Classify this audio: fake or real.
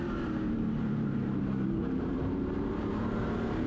fake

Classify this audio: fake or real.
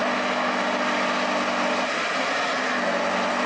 real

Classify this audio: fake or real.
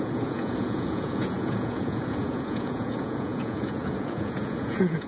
fake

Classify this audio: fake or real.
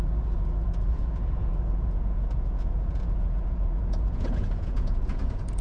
fake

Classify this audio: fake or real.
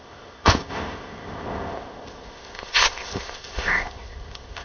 fake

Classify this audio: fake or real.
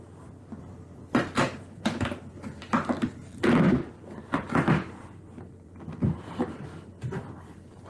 fake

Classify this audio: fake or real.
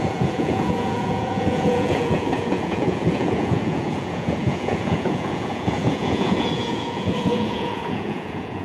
fake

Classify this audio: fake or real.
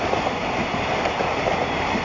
real